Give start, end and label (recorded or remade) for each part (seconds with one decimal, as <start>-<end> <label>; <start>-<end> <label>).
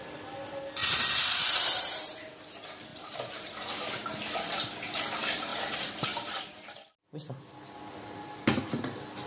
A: 0.0-0.8 recorded; 0.8-2.4 remade; 2.4-2.9 recorded; 2.9-3.5 remade; 3.5-5.5 recorded; 5.5-6.4 remade; 6.4-9.3 recorded